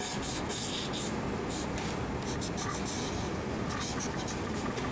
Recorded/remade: recorded